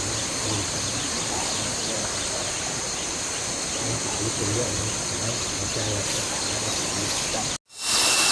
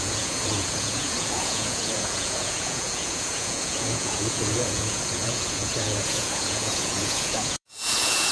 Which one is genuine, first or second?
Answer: first